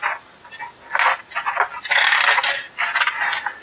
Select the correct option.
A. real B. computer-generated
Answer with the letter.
A